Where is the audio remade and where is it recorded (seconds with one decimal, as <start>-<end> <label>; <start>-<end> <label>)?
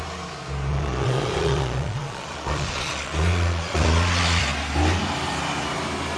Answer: 0.0-0.7 recorded; 0.7-4.4 remade; 4.4-6.2 recorded